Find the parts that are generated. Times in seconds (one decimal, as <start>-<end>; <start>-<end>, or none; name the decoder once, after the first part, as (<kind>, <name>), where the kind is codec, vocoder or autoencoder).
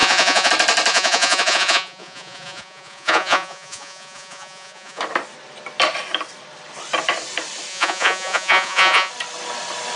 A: 0.0-0.5 (vocoder, Vocos); 0.9-5.0; 7.7-9.1